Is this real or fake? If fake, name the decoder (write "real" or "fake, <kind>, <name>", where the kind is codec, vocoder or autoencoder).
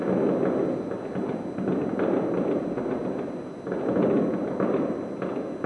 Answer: real